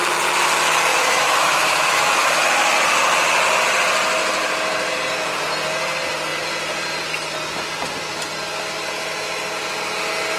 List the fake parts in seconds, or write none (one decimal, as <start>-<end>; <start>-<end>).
0.9-2.3

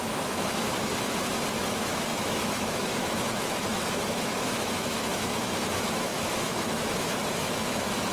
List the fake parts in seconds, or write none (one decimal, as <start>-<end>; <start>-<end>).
0.0-0.9; 1.6-8.1

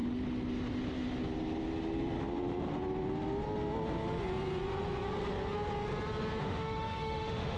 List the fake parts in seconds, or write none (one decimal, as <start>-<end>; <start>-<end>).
6.4-7.6

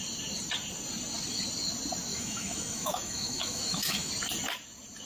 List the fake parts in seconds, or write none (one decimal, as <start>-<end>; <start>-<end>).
2.1-4.1

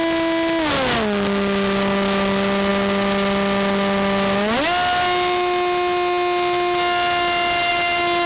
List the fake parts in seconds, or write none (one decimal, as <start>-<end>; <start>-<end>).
none